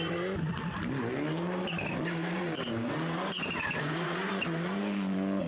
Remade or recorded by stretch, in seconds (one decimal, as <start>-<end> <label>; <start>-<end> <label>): 0.0-0.5 remade; 0.5-3.8 recorded; 3.8-5.5 remade